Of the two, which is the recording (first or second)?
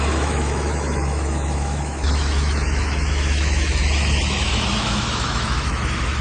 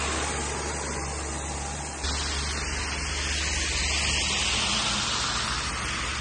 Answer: second